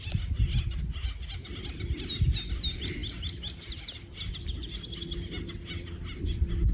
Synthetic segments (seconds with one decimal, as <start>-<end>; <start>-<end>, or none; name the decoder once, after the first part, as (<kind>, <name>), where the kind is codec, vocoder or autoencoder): none